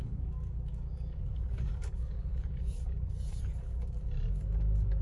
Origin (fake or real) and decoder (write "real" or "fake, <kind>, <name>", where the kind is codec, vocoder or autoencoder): fake, codec, DAC